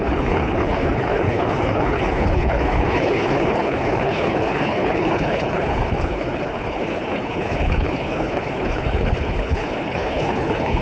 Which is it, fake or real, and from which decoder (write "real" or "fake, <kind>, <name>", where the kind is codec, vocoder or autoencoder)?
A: fake, codec, HILCodec